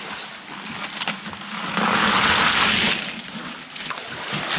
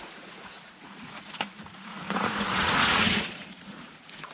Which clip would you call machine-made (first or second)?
second